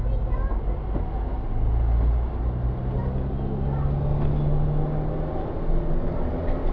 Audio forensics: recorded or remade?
recorded